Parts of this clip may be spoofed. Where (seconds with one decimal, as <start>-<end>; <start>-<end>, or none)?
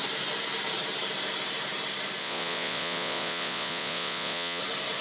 2.2-4.6